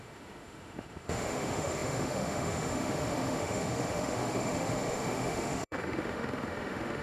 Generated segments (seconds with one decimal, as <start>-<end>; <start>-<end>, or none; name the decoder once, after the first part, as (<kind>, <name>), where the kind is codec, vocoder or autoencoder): 0.0-7.0 (autoencoder, DAC-VAE)